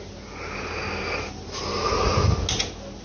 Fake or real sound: real